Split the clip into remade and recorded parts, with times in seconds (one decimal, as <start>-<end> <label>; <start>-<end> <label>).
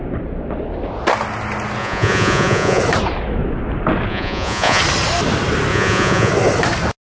0.0-1.8 recorded; 1.8-2.8 remade; 2.8-4.1 recorded; 4.1-4.8 remade; 4.8-5.7 recorded; 5.7-6.3 remade; 6.3-7.1 recorded